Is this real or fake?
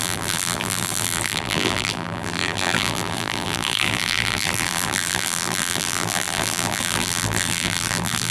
fake